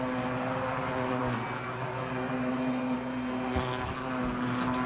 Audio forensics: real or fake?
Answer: real